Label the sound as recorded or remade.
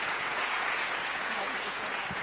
remade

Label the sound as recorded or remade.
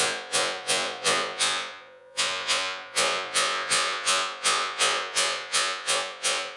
remade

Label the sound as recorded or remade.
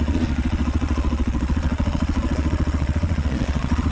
remade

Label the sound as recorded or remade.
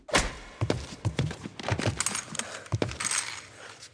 recorded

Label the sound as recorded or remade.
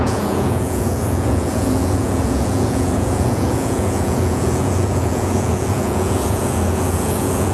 remade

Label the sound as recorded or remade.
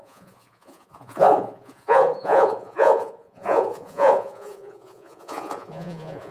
remade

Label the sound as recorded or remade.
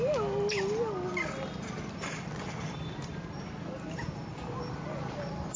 recorded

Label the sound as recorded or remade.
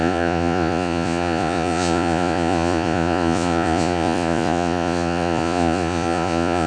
remade